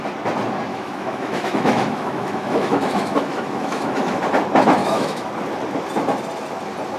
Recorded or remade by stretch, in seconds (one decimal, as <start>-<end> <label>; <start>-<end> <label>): 0.0-0.7 recorded; 0.7-4.2 remade; 4.2-4.8 recorded; 4.8-5.3 remade; 5.3-7.0 recorded